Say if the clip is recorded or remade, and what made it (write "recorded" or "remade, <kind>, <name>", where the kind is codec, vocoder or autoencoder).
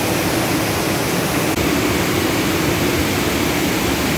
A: recorded